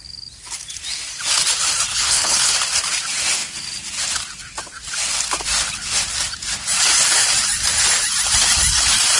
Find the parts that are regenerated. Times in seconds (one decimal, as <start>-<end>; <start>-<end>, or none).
1.9-2.5